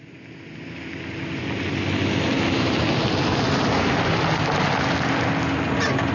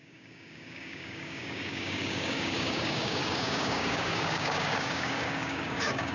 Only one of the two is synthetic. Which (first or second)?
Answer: second